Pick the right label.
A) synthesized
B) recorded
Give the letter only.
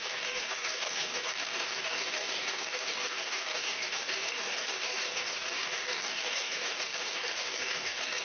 A